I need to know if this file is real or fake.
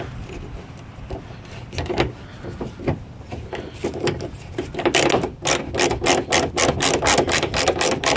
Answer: real